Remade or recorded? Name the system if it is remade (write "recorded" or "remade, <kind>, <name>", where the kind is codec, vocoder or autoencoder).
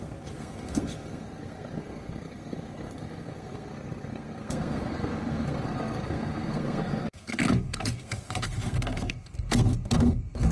remade, codec, SNAC